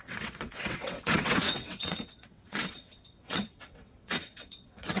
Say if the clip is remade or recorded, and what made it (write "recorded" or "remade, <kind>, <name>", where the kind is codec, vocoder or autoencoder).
remade, vocoder, WaveNeXt